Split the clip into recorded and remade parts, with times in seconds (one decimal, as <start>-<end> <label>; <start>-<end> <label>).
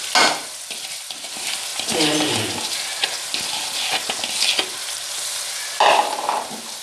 0.0-6.8 recorded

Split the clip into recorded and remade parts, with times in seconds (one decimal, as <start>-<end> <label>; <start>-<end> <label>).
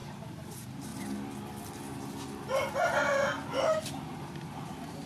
0.0-0.9 remade; 0.9-3.9 recorded; 3.9-5.1 remade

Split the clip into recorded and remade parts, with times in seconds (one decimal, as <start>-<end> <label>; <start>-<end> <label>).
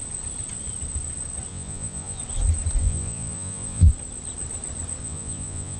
0.0-1.5 recorded; 1.5-2.2 remade; 2.2-2.8 recorded; 2.8-3.9 remade; 3.9-5.0 recorded; 5.0-5.8 remade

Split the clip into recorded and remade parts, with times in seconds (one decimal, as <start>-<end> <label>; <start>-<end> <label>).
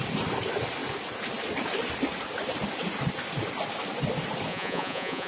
0.0-4.5 recorded; 4.5-5.3 remade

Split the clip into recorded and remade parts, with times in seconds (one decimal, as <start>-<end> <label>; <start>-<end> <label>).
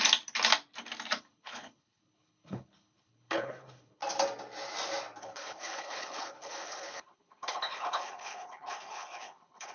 0.0-1.2 recorded; 1.2-4.0 remade; 4.0-5.2 recorded; 5.2-9.7 remade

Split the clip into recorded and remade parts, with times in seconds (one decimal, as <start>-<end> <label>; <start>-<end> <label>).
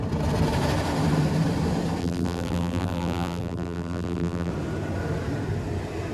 0.0-2.0 recorded; 2.0-4.5 remade; 4.5-6.1 recorded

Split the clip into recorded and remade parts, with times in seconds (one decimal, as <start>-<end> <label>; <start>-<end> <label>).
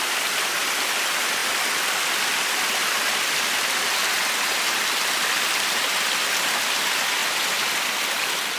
0.0-8.6 recorded